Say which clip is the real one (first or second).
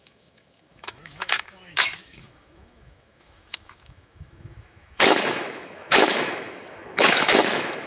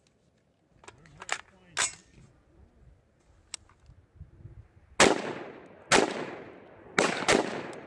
second